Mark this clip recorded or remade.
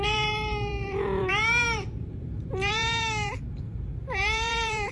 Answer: remade